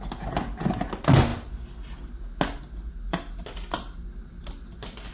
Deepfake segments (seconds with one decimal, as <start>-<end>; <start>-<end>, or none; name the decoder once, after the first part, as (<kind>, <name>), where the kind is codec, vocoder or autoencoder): none

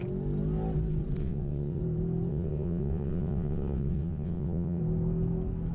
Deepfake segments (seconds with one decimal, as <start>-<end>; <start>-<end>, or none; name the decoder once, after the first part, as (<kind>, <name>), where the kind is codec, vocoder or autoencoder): 1.2-1.8 (vocoder, WaveNeXt); 2.3-4.8

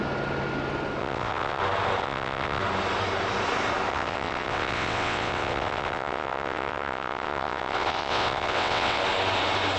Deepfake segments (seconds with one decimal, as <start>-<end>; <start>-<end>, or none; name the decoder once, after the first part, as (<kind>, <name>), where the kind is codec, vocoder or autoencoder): 1.0-1.6 (vocoder, WaveNeXt); 2.0-2.6; 3.9-9.0

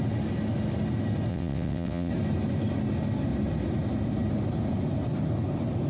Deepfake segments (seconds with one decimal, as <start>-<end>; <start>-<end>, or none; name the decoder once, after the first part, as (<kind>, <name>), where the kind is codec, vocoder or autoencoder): 1.3-2.1 (vocoder, WaveNeXt)

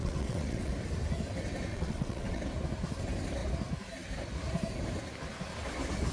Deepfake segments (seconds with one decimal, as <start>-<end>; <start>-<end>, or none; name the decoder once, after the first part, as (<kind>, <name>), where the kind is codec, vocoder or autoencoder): 0.0-0.7 (vocoder, WaveNeXt); 1.7-2.4